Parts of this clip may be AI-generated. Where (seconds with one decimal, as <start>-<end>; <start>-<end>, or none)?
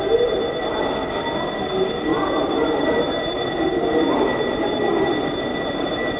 2.1-2.9; 5.5-6.2